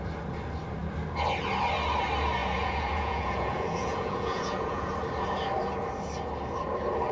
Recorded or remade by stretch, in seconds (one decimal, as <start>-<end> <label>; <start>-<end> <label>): 0.0-2.4 recorded; 2.4-4.9 remade; 4.9-7.1 recorded